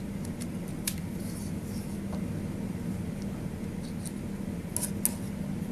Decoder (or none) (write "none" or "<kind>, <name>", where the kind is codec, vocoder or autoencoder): none